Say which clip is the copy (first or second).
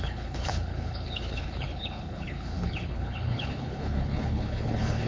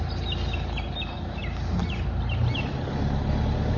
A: first